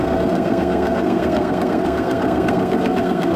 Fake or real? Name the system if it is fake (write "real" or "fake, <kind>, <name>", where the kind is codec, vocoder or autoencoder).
fake, codec, SNAC